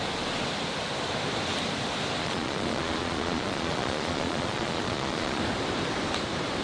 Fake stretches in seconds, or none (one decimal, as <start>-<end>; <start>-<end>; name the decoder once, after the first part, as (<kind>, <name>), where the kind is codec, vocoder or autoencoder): 2.2-5.4 (vocoder, Vocos)